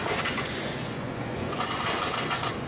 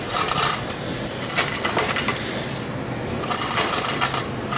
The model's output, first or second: first